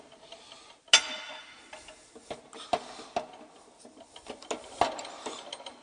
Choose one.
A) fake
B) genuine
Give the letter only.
B